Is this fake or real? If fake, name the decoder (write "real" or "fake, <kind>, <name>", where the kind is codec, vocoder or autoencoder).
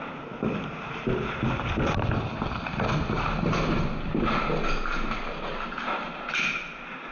real